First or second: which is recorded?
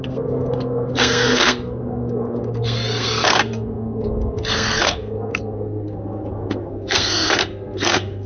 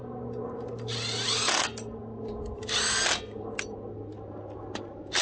second